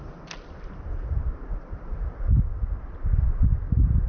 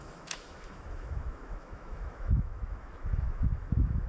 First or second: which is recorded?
first